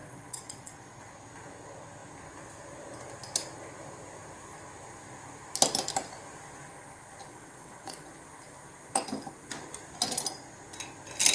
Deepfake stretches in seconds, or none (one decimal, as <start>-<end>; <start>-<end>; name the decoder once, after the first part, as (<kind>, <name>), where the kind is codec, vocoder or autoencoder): 0.0-1.1 (vocoder, WaveNeXt); 7.3-8.1